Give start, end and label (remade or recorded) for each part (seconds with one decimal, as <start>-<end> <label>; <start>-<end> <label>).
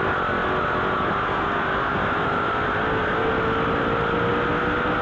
0.0-1.3 recorded; 1.3-2.5 remade; 2.5-5.0 recorded